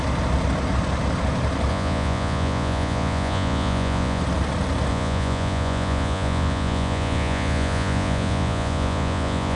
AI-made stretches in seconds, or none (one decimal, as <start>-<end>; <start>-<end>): 1.7-4.2; 4.9-9.6

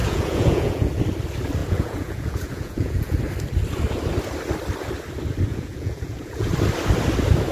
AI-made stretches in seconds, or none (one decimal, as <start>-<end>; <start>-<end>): 0.0-1.0; 1.6-3.2; 5.5-6.5

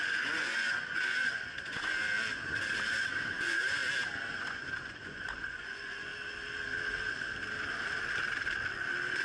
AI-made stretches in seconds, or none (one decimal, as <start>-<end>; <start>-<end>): 0.0-2.0; 3.3-3.8; 4.3-6.1

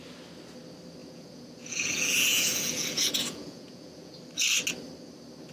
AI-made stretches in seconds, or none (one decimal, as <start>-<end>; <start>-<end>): 1.0-4.1

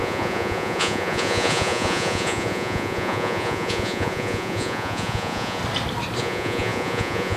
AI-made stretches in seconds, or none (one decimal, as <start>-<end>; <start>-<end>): 0.0-5.6; 6.2-7.4